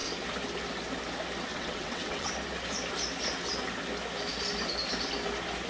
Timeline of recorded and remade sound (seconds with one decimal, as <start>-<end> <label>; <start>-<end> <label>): 0.0-1.5 recorded; 1.5-2.3 remade; 2.3-5.7 recorded